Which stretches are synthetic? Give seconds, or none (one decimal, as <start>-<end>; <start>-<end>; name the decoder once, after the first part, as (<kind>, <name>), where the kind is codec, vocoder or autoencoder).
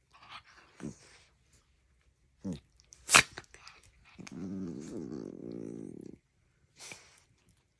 5.4-7.3 (vocoder, BigVGAN v2)